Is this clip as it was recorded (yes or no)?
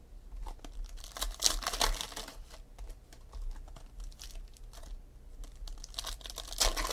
yes